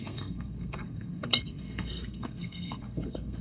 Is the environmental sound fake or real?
fake